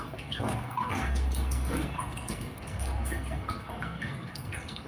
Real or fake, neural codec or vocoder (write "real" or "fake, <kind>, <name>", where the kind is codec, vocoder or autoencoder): fake, codec, SNAC